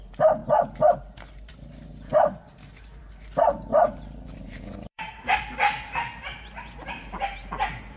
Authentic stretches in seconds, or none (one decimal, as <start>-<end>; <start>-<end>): 0.0-3.7; 5.4-8.0